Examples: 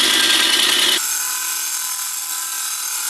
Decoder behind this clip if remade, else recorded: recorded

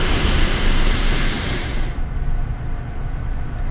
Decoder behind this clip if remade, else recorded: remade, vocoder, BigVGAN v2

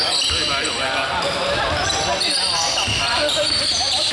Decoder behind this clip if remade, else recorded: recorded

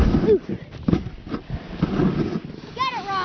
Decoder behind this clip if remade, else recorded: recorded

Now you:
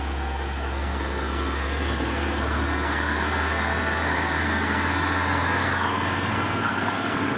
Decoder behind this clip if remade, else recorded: remade, codec, SNAC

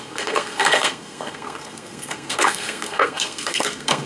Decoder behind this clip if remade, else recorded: remade, codec, SNAC